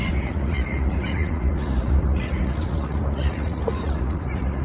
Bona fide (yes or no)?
no